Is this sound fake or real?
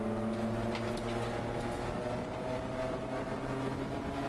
real